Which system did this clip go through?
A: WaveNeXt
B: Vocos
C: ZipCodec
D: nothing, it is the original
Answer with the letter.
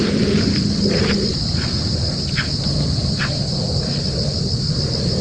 D